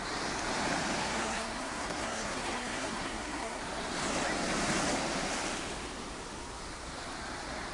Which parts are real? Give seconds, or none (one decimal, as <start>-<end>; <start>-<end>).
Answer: 0.0-1.0; 3.6-7.7